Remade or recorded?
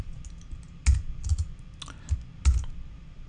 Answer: recorded